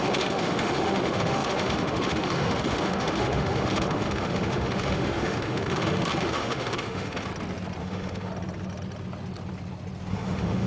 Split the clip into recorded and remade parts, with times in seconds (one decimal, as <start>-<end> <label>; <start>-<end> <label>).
0.0-7.3 remade; 7.3-7.8 recorded; 7.8-8.3 remade; 8.3-10.1 recorded; 10.1-10.7 remade

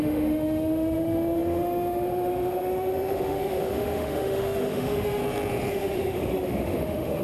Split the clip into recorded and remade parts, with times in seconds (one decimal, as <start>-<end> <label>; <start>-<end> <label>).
0.0-5.2 remade; 5.2-5.7 recorded; 5.7-7.2 remade